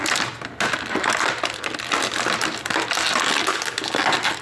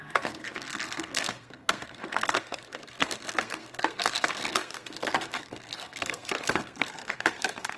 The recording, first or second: first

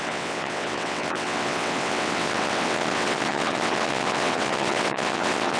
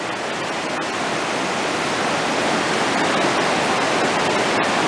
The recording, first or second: second